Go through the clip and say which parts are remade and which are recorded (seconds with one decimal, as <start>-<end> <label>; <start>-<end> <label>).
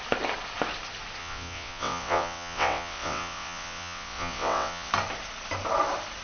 0.0-1.2 recorded; 1.2-4.9 remade; 4.9-6.2 recorded